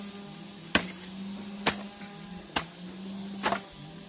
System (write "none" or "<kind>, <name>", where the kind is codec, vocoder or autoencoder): none